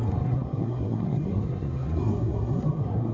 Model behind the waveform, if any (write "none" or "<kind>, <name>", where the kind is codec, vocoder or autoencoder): codec, SNAC